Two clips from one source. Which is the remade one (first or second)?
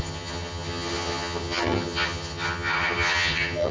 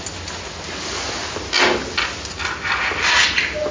first